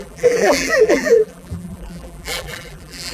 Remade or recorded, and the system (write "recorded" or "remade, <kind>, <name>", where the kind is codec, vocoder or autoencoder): remade, vocoder, BigVGAN v2